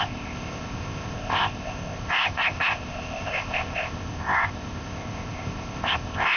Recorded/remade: remade